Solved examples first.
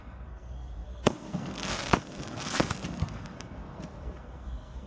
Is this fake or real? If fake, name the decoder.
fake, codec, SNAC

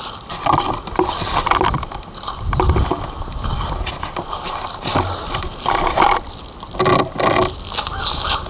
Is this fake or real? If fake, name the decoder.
real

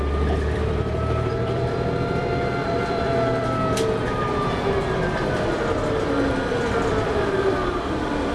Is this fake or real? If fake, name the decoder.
fake, vocoder, BigVGAN v2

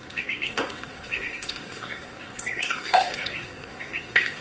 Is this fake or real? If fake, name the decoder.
fake, codec, SNAC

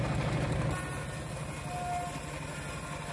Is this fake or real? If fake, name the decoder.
real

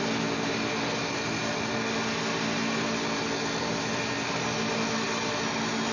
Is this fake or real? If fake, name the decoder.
real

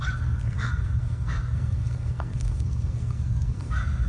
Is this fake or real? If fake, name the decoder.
fake, codec, SNAC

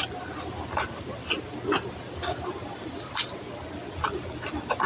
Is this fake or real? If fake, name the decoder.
real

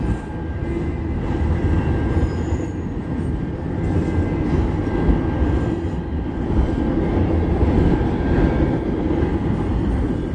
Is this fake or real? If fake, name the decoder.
real